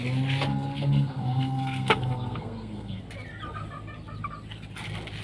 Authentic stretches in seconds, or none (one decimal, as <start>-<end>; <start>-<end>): 0.0-0.5; 3.0-5.2